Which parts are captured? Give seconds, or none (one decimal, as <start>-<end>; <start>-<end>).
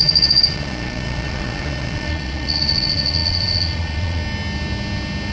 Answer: 4.2-5.3